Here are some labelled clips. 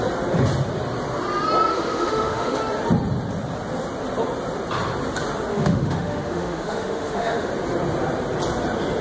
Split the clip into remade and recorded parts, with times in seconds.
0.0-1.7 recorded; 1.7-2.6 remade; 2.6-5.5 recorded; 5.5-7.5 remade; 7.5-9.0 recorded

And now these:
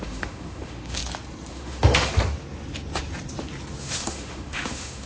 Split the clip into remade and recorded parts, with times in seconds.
0.0-1.0 remade; 1.0-1.5 recorded; 1.5-2.1 remade; 2.1-3.8 recorded; 3.8-5.1 remade

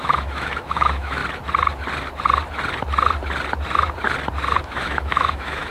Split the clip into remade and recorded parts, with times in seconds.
0.0-1.2 remade; 1.2-4.6 recorded; 4.6-5.7 remade